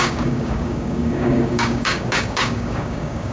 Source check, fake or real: fake